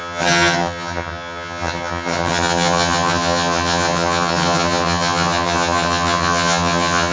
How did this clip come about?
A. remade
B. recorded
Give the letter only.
A